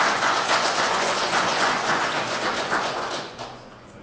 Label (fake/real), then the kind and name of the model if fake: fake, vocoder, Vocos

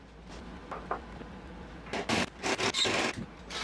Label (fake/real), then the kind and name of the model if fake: real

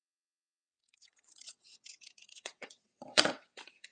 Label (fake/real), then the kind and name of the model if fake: fake, vocoder, WaveNeXt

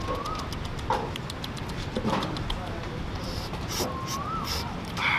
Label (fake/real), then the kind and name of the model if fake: real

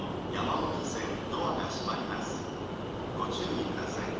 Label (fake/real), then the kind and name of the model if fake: real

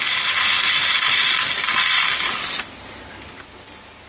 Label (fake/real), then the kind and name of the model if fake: real